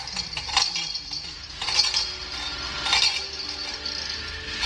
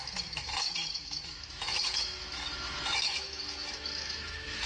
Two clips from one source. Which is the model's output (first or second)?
second